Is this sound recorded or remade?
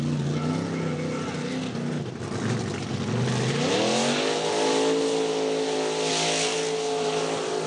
recorded